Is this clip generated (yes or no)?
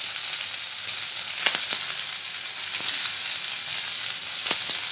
no